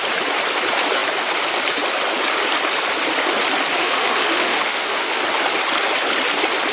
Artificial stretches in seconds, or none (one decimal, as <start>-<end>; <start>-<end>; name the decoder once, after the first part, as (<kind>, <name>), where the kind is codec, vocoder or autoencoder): 3.8-5.2 (autoencoder, DAC-VAE)